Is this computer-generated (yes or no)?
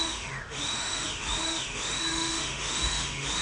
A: yes